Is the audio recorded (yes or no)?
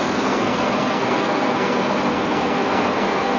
no